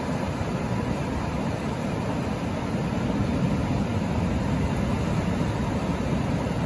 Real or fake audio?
real